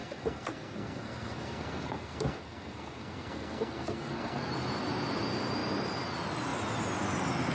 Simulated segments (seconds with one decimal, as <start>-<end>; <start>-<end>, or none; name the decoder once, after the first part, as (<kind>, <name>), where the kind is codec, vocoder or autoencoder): 0.0-4.5 (codec, SNAC)